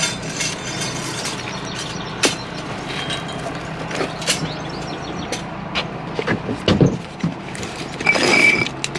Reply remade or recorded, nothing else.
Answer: recorded